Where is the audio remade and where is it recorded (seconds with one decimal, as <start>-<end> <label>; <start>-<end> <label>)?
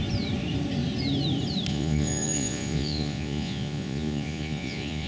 0.0-1.7 recorded; 1.7-5.1 remade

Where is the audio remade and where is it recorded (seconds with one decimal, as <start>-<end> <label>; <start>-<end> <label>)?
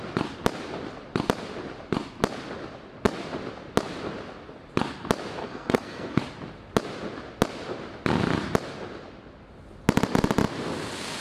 0.0-5.4 recorded; 5.4-6.2 remade; 6.2-11.2 recorded